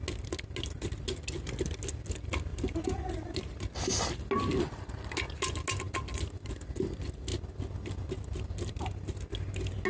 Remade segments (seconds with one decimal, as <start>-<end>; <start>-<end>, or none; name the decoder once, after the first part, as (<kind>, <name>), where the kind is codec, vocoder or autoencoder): none